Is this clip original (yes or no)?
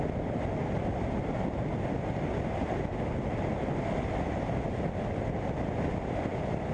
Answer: yes